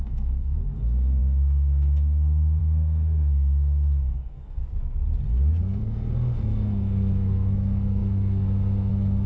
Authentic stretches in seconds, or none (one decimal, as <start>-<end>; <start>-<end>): 4.6-5.6